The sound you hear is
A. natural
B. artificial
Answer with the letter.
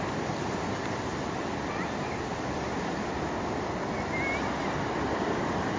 A